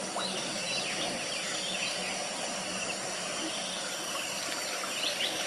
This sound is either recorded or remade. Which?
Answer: recorded